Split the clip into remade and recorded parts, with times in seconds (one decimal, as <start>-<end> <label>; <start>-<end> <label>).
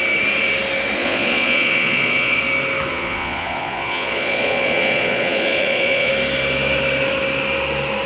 0.0-1.0 recorded; 1.0-2.4 remade; 2.4-2.9 recorded; 2.9-6.1 remade; 6.1-8.1 recorded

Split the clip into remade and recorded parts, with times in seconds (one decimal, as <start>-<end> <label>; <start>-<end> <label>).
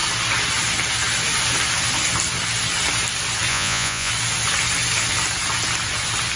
0.0-3.5 recorded; 3.5-4.1 remade; 4.1-6.4 recorded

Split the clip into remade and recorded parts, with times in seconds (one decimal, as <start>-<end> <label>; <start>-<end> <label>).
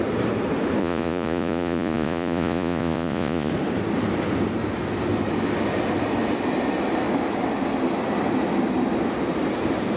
0.0-0.8 recorded; 0.8-3.5 remade; 3.5-10.0 recorded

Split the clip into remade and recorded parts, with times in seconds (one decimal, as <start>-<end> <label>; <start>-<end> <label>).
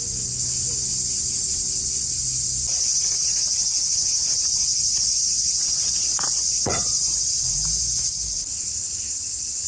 0.0-4.9 recorded; 4.9-7.4 remade; 7.4-9.7 recorded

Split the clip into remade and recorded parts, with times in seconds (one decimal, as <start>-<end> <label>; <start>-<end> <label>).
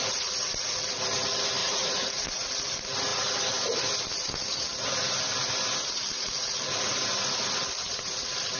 0.0-1.6 recorded; 1.6-2.5 remade; 2.5-8.6 recorded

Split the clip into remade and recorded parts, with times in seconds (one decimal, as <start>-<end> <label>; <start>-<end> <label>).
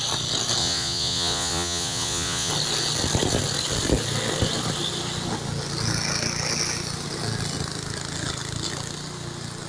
0.0-0.6 recorded; 0.6-2.5 remade; 2.5-9.7 recorded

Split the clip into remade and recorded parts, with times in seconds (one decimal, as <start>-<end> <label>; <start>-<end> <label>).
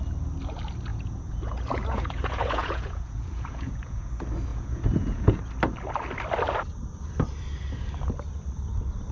0.0-0.9 recorded; 0.9-4.1 remade; 4.1-4.5 recorded; 4.5-5.4 remade; 5.4-9.1 recorded